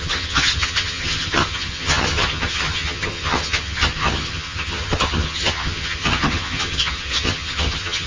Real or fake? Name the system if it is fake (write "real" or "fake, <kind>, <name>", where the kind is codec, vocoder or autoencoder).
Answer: fake, vocoder, HiFi-GAN